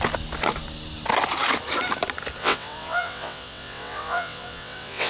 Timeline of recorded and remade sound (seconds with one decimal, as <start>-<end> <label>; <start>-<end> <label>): 0.0-2.4 recorded; 2.4-5.1 remade